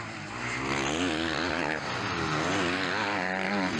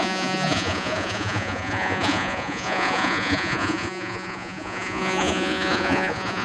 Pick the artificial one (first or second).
second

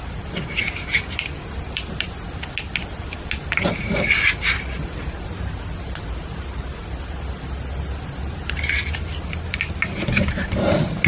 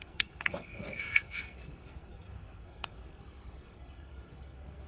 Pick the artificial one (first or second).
second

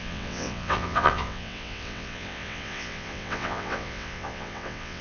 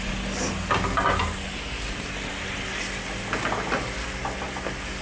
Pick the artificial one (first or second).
first